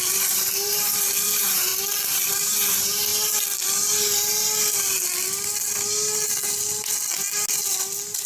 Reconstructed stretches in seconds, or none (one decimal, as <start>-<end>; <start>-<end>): 0.0-1.7; 2.3-3.1

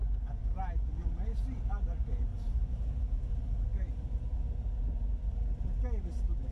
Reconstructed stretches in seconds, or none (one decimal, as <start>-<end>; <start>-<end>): 0.4-1.1; 2.3-3.3; 3.7-4.4

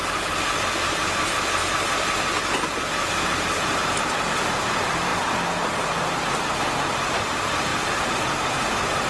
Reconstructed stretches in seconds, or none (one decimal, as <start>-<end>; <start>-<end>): 0.0-1.6; 3.2-5.1; 6.1-9.1

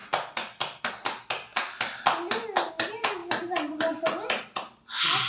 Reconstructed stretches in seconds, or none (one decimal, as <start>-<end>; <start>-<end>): none

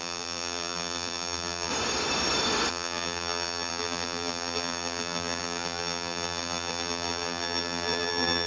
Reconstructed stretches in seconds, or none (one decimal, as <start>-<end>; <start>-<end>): 0.0-1.7; 2.7-8.5